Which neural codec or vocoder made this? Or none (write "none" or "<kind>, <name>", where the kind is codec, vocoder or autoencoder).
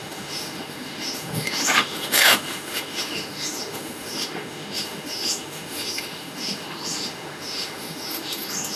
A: autoencoder, DAC-VAE